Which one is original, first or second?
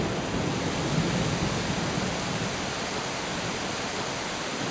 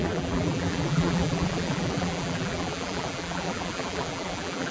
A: first